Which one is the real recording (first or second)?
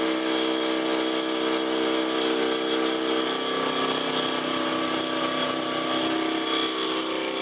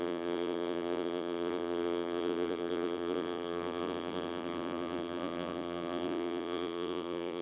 first